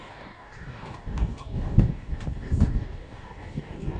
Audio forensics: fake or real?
fake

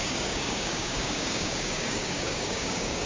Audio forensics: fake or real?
fake